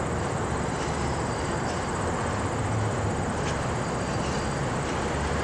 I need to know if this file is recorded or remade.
recorded